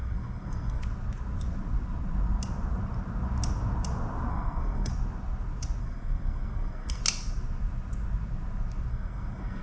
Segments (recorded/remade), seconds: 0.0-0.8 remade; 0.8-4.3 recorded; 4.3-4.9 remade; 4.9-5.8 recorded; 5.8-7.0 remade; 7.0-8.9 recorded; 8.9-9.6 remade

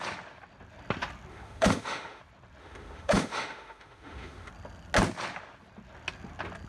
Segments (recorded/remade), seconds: 0.0-1.3 recorded; 1.3-2.2 remade; 2.2-2.6 recorded; 2.6-4.5 remade; 4.5-6.7 recorded

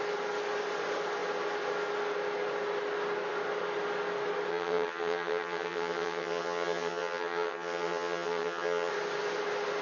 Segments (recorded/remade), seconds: 0.0-4.5 recorded; 4.5-8.9 remade; 8.9-9.8 recorded

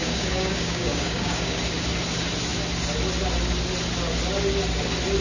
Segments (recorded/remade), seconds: 0.0-1.6 remade; 1.6-5.2 recorded

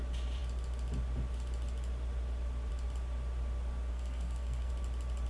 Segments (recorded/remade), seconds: 0.0-3.9 recorded; 3.9-4.7 remade; 4.7-5.3 recorded

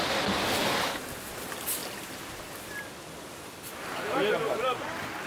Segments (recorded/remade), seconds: 0.0-5.3 recorded

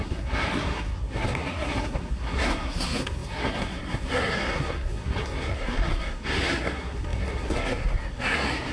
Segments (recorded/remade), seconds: 0.0-8.7 remade